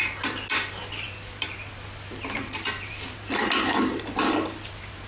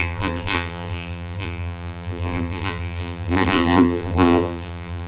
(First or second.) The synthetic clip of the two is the second